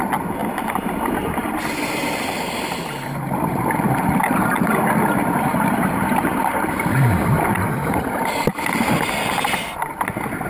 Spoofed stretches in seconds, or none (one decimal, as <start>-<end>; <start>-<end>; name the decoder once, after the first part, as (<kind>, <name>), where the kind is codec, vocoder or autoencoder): 0.4-3.6 (vocoder, BigVGAN v2)

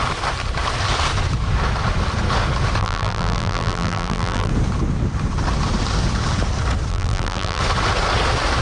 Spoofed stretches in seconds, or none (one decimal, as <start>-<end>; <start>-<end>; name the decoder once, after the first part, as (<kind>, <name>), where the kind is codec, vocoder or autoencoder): 2.8-4.5 (vocoder, BigVGAN v2); 6.9-7.6

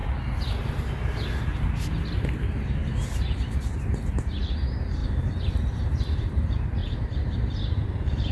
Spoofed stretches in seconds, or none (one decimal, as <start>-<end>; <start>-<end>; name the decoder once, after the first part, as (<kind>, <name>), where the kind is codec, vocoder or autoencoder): 4.1-8.3 (vocoder, BigVGAN v2)

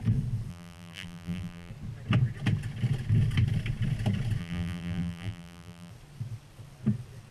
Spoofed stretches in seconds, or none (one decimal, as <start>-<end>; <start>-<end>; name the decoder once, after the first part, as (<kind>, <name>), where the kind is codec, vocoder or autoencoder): 0.5-1.7 (vocoder, BigVGAN v2); 4.4-5.9